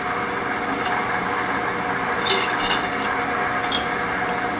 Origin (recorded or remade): recorded